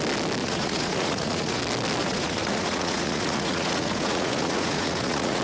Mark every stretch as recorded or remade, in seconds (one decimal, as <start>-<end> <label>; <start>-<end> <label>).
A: 0.0-0.4 recorded; 0.4-1.6 remade; 1.6-2.0 recorded; 2.0-5.4 remade